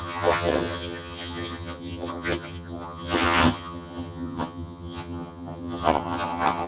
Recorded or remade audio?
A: remade